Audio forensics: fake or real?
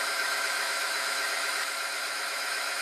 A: fake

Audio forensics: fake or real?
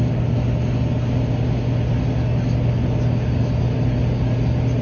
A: real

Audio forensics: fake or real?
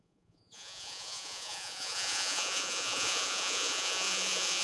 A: fake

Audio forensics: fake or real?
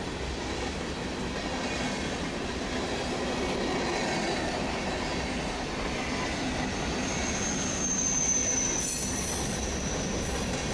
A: real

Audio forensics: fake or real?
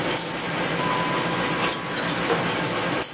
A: real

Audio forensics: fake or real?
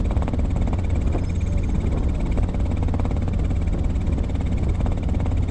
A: real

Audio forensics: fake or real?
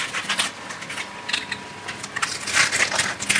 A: real